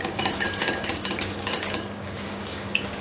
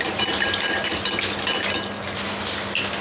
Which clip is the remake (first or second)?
first